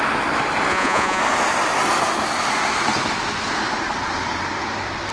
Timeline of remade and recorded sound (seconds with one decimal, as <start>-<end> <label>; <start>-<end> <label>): 0.0-0.7 recorded; 0.7-1.2 remade; 1.2-5.1 recorded